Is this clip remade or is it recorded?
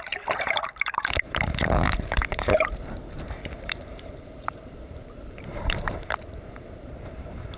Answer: remade